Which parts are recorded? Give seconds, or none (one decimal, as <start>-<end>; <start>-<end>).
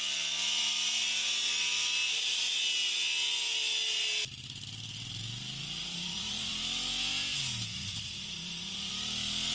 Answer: 0.0-2.1; 2.6-5.8; 6.5-7.7; 8.9-9.5